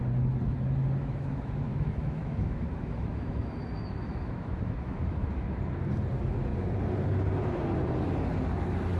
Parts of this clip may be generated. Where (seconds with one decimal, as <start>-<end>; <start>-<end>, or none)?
1.0-5.6